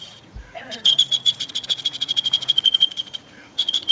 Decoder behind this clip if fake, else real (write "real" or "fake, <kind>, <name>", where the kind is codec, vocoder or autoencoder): fake, vocoder, Vocos